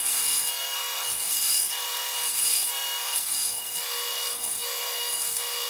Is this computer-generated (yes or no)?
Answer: yes